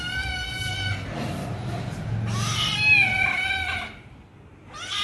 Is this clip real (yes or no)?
yes